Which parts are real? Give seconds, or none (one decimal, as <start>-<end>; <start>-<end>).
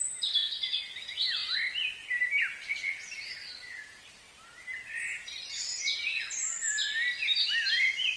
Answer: 0.0-8.2